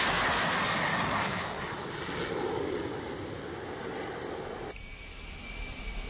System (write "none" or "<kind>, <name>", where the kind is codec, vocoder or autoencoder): none